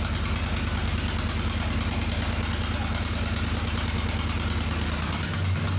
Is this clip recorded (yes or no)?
yes